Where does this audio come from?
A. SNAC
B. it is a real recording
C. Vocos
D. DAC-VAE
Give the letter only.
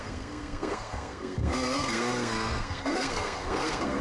A